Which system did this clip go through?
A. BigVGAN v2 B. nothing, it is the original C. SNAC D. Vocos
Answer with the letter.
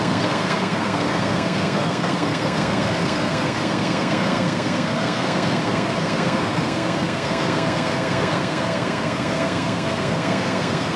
C